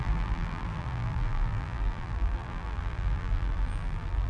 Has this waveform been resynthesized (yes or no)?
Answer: yes